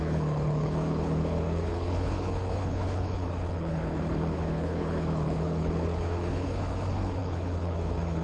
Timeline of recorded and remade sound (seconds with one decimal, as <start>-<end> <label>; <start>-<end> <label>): 0.0-8.2 remade